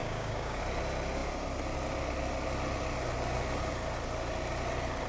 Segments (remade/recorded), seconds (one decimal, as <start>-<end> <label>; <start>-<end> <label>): 0.0-0.6 remade; 0.6-5.1 recorded